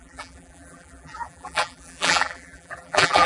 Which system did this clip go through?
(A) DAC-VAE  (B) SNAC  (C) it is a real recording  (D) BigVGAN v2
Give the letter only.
D